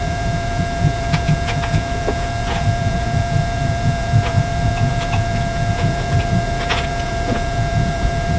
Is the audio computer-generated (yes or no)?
yes